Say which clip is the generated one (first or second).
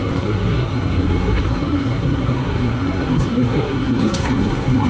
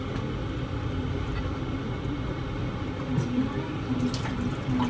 first